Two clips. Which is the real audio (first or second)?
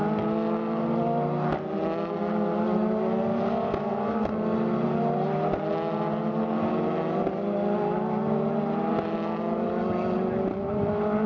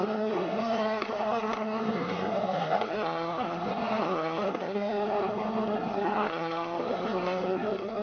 first